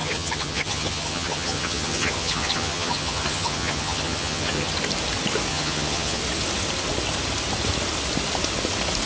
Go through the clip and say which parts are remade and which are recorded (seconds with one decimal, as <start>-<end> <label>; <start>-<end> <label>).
0.0-4.7 remade; 4.7-5.5 recorded; 5.5-6.2 remade; 6.2-9.1 recorded